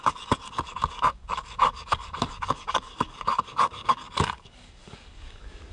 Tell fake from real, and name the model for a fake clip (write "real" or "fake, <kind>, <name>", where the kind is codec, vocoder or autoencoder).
fake, codec, DAC